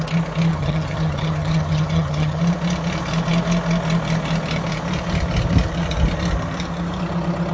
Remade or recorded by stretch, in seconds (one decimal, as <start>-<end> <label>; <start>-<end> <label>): 0.0-0.5 recorded; 0.5-2.4 remade; 2.4-7.5 recorded